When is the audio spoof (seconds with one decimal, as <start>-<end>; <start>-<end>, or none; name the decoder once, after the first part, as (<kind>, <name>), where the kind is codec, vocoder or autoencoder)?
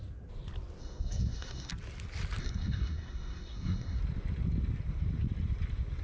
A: 0.8-1.7 (codec, SNAC); 2.4-4.0